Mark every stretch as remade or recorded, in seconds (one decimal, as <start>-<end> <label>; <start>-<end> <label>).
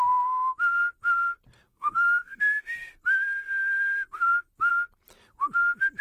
0.0-1.7 recorded; 1.7-2.4 remade; 2.4-6.0 recorded